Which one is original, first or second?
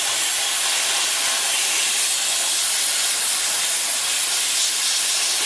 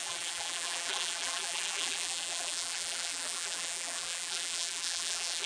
first